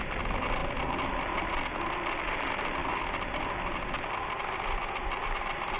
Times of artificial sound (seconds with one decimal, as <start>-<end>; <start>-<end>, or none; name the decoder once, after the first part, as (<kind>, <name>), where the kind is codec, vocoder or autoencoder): none